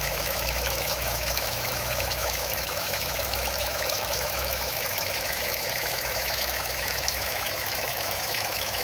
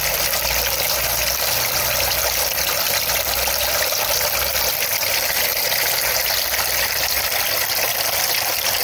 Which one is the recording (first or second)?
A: second